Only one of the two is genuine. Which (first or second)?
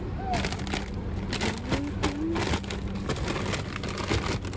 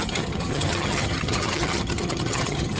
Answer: first